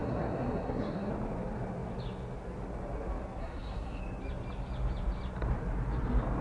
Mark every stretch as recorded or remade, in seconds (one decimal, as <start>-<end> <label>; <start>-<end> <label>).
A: 0.0-1.1 remade; 1.1-3.4 recorded; 3.4-4.0 remade; 4.0-6.4 recorded